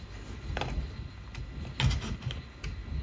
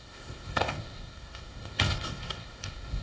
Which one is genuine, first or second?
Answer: first